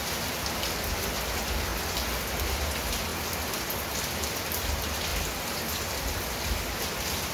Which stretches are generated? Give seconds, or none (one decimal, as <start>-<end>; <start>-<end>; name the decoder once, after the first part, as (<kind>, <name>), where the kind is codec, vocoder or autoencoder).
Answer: none